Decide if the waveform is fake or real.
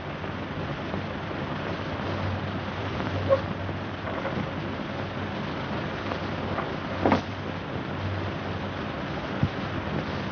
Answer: real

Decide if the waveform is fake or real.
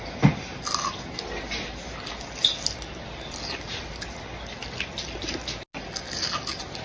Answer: real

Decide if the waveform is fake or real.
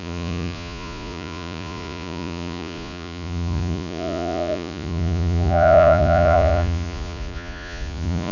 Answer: fake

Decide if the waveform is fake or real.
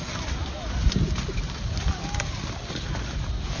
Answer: real